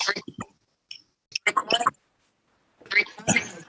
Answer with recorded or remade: recorded